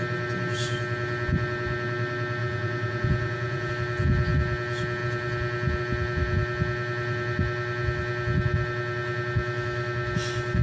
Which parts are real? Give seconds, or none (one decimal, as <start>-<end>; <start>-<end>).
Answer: 0.0-2.4; 3.7-10.6